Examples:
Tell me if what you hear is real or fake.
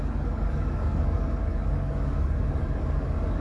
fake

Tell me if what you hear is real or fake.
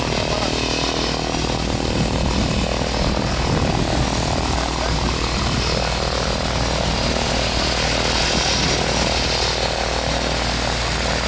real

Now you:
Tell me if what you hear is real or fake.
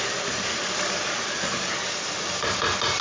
real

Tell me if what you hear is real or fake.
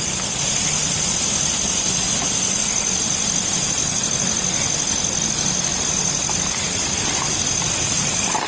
real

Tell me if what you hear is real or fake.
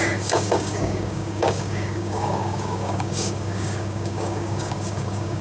fake